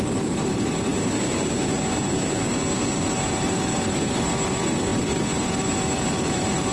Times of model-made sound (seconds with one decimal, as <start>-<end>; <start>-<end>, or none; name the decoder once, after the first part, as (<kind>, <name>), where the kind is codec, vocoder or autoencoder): 0.0-0.9 (vocoder, BigVGAN v2); 3.3-6.7